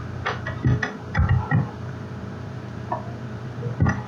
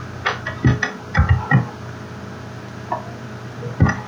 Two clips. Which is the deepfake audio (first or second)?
first